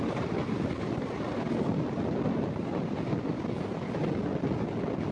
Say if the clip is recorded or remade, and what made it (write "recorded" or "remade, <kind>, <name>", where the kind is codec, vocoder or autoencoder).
recorded